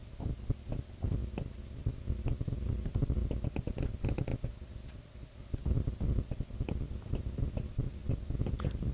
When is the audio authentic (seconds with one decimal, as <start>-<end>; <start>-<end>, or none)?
0.0-8.9